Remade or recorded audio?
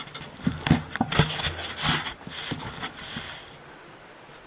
recorded